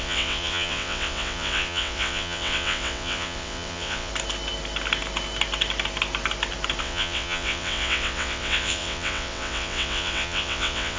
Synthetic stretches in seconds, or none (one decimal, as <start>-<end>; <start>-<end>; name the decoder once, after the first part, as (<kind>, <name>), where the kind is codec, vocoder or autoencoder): 0.0-4.1 (vocoder, WaveNeXt); 6.8-11.0